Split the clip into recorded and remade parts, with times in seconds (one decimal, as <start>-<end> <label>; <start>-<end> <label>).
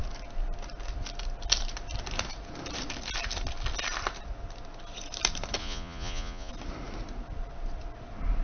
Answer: 0.0-5.6 recorded; 5.6-6.5 remade; 6.5-8.4 recorded